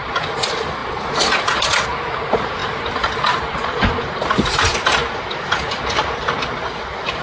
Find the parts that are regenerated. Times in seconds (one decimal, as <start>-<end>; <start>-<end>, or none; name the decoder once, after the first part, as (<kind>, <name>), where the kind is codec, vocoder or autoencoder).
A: none